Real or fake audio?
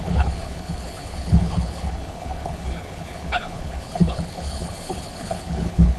fake